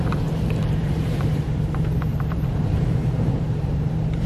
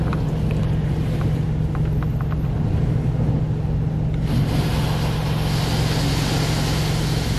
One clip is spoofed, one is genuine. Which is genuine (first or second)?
second